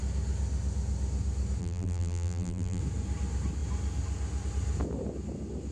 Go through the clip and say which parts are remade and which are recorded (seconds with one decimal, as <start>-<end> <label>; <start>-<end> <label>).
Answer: 0.0-1.6 recorded; 1.6-2.8 remade; 2.8-5.7 recorded